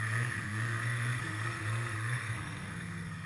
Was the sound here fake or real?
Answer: fake